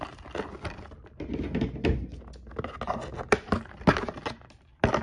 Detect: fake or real real